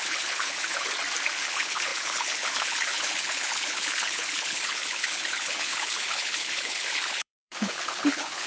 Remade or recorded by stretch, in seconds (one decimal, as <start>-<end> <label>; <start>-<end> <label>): 0.0-0.9 remade; 0.9-1.4 recorded; 1.4-8.5 remade